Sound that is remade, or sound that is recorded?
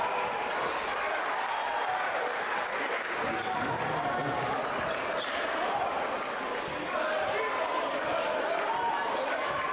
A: recorded